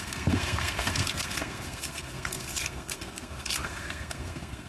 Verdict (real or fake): fake